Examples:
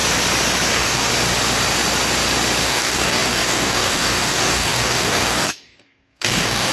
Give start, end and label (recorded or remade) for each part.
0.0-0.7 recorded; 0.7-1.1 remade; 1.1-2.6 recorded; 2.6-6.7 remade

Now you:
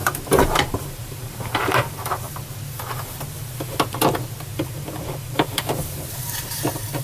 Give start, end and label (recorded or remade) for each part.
0.0-2.3 remade; 2.3-4.5 recorded; 4.5-6.1 remade; 6.1-7.0 recorded

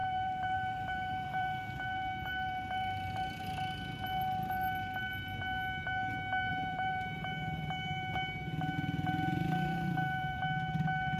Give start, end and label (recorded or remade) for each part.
0.0-3.4 remade; 3.4-6.5 recorded; 6.5-10.4 remade; 10.4-11.2 recorded

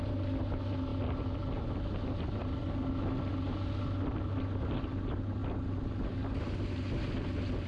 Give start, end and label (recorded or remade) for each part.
0.0-7.7 recorded

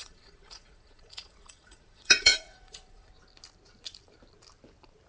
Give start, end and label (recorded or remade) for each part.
0.0-3.1 remade; 3.1-5.1 recorded

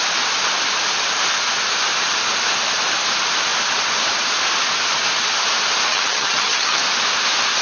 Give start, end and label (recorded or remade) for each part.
0.0-5.9 recorded; 5.9-6.8 remade; 6.8-7.6 recorded

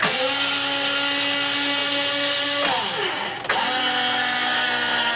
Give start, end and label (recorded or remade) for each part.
0.0-5.2 recorded

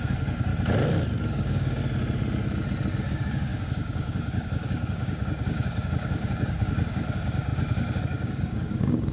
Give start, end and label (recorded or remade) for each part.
0.0-0.5 remade; 0.5-1.2 recorded; 1.2-1.8 remade; 1.8-3.0 recorded; 3.0-9.1 remade